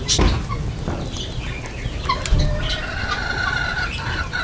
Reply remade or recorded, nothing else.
recorded